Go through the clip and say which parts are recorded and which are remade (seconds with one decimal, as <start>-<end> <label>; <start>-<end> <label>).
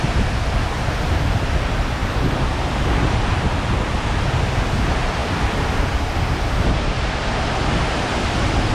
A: 0.0-8.7 recorded